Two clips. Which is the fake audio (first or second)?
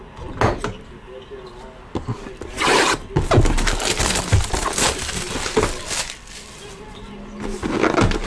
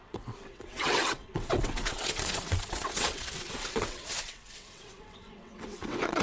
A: second